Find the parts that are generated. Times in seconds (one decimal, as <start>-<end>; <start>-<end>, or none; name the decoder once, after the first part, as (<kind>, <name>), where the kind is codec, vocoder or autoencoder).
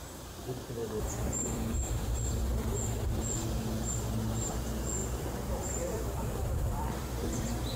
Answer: 0.8-2.5 (vocoder, BigVGAN v2); 5.0-7.1